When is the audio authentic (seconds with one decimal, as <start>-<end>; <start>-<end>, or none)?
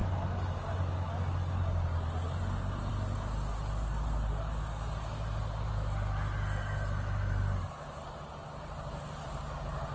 0.0-8.3; 9.0-9.9